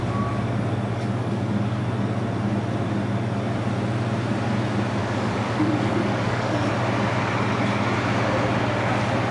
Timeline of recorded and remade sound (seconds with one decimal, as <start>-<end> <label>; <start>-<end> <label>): 0.0-0.9 recorded; 0.9-1.8 remade; 1.8-5.0 recorded; 5.0-6.7 remade; 6.7-9.3 recorded